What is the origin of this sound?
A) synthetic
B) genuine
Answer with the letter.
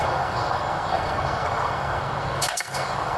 A